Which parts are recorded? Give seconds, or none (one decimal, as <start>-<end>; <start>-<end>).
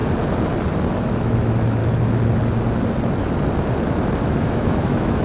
0.0-1.0; 1.8-4.2